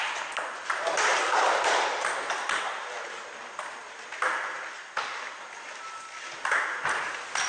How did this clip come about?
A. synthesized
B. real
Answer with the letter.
B